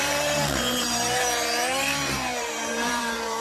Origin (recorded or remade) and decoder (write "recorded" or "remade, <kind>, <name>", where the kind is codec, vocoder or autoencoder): remade, vocoder, BigVGAN v2